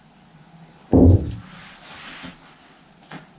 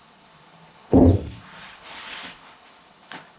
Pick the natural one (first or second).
first